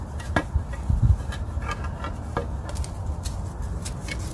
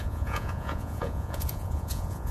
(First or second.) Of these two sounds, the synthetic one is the second